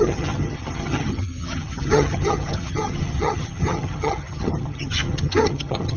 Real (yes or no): no